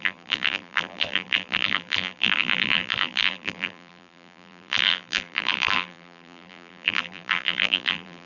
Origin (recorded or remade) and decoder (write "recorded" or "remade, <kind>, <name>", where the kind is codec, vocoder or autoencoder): remade, vocoder, BigVGAN v2